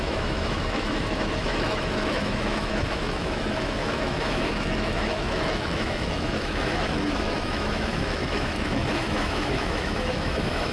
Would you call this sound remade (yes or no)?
yes